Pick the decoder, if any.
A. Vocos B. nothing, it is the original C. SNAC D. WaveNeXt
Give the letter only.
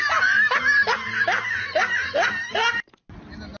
B